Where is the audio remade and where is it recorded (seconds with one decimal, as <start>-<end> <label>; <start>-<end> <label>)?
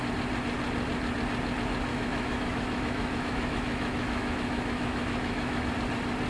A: 0.0-1.9 recorded; 1.9-5.7 remade; 5.7-6.3 recorded